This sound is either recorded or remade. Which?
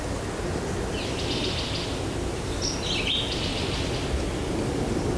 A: recorded